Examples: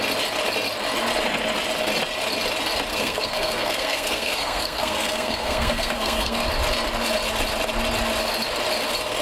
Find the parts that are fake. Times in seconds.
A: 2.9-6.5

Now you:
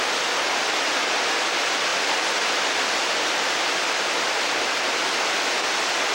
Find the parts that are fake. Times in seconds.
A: 0.0-1.9; 2.8-6.1

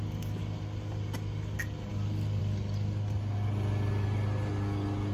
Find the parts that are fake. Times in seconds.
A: none

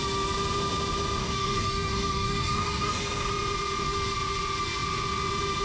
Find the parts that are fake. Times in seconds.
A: 1.2-3.3

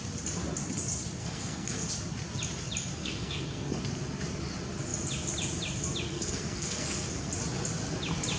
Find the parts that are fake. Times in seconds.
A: 1.2-1.9; 3.0-3.8; 6.1-7.3

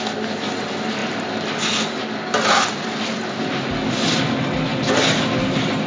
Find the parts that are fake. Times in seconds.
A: none

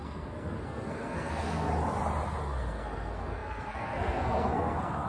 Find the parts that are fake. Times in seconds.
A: 0.0-1.7; 2.4-5.1